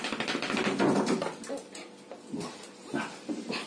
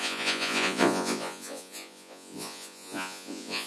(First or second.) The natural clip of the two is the first